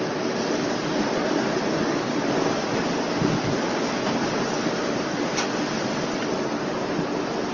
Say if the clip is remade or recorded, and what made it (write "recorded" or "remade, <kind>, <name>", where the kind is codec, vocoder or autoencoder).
recorded